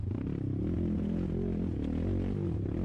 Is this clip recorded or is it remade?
recorded